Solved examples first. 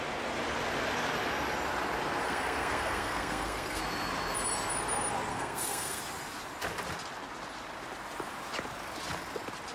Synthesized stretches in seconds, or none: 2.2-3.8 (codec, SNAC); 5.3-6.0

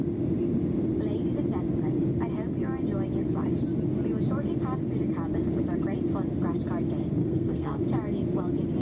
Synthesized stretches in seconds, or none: 7.2-7.8 (codec, SNAC)

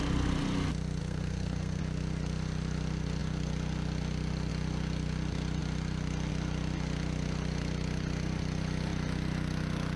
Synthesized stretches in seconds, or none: 1.0-1.8 (codec, SNAC)

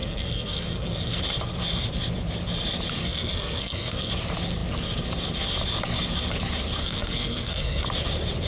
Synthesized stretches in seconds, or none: 0.0-1.2 (codec, SNAC); 3.0-4.1; 6.8-7.8

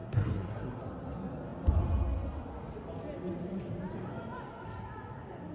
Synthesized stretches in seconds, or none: 0.0-0.8 (codec, SNAC)